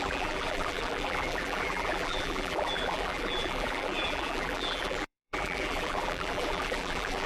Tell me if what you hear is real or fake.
fake